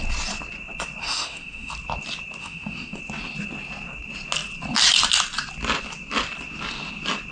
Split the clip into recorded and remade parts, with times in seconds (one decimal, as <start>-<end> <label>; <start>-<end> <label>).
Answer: 0.0-1.0 recorded; 1.0-1.7 remade; 1.7-2.4 recorded; 2.4-3.0 remade; 3.0-7.3 recorded